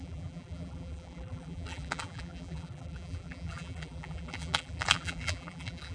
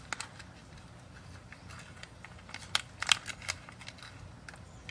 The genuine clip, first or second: second